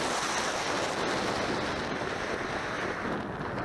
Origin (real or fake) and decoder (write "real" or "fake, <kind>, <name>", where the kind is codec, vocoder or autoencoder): real